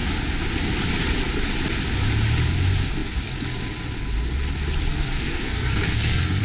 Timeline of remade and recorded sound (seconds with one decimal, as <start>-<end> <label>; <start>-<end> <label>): 0.0-4.9 recorded; 4.9-6.4 remade